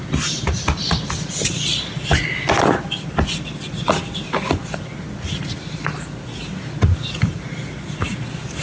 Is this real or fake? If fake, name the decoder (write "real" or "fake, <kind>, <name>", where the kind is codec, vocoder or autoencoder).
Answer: real